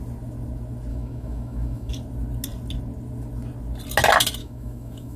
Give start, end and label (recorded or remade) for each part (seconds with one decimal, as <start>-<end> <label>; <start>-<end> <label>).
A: 0.0-0.9 recorded; 0.9-1.9 remade; 1.9-4.4 recorded; 4.4-5.2 remade